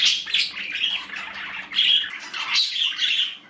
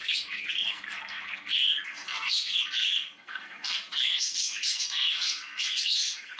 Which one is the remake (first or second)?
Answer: second